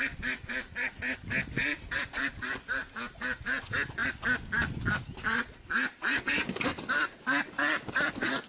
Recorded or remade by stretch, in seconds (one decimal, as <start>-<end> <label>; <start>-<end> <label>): 0.0-8.5 recorded